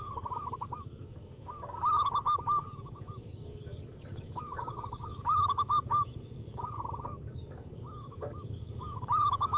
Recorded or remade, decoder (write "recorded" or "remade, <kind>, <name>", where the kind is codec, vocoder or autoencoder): remade, codec, DAC